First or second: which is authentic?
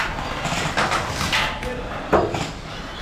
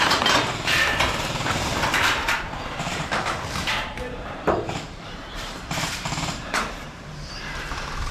first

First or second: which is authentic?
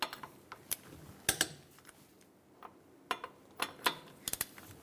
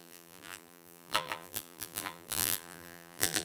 first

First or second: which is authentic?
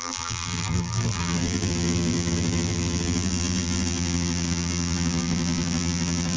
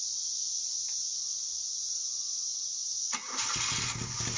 second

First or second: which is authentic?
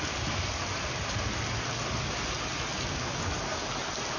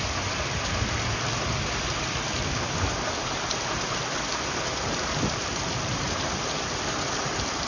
first